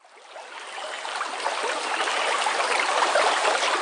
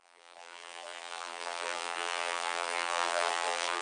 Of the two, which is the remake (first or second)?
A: second